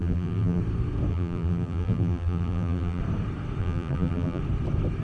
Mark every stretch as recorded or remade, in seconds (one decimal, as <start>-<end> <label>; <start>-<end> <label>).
0.0-0.6 remade; 0.6-1.1 recorded; 1.1-3.0 remade; 3.0-3.6 recorded; 3.6-4.4 remade; 4.4-5.0 recorded